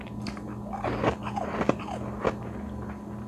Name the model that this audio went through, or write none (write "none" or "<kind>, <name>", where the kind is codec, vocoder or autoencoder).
none